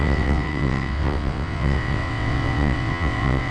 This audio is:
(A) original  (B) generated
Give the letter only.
B